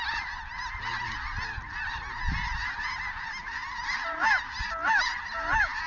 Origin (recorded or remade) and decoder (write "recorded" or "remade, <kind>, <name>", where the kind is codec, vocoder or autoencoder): recorded